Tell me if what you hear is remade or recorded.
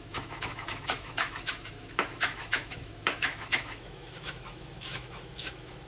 remade